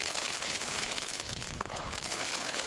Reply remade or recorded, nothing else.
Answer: remade